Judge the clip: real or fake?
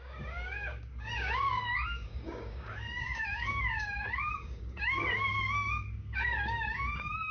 fake